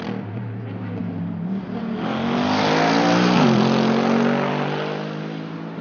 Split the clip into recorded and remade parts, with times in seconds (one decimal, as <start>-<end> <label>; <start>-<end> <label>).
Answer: 0.0-5.8 recorded